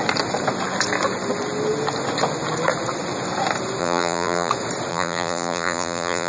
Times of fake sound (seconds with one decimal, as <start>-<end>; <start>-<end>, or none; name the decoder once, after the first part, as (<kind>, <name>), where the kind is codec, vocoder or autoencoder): 3.8-4.5 (vocoder, BigVGAN v2); 4.9-6.3